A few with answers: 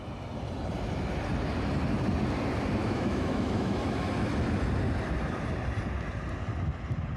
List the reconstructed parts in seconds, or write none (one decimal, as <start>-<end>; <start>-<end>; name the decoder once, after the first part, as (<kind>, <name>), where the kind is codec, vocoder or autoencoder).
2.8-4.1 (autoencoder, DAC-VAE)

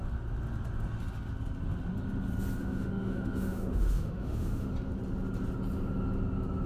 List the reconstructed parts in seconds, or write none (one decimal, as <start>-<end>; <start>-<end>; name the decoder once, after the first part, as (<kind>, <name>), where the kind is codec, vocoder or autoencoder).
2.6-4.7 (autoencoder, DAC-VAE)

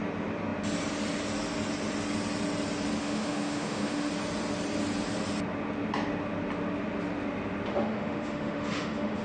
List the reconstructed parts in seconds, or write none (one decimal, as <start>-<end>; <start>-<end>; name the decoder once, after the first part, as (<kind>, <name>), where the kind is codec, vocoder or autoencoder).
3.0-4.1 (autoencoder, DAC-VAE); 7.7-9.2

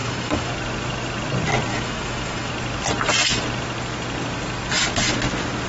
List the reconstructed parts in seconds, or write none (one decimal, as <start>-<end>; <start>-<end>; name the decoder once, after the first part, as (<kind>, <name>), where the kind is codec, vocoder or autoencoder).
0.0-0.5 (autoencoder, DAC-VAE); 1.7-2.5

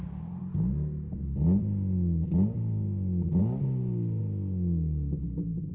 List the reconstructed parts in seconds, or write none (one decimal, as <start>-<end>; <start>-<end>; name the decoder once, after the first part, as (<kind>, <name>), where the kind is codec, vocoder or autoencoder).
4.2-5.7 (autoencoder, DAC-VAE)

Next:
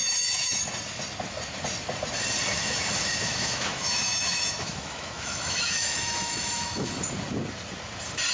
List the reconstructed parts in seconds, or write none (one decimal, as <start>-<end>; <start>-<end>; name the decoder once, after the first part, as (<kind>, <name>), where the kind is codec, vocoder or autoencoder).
0.0-0.6 (autoencoder, DAC-VAE); 2.5-6.9